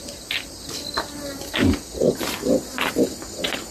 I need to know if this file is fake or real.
real